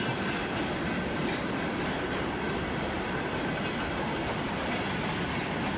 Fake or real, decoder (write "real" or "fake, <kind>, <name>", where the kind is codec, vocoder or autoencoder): real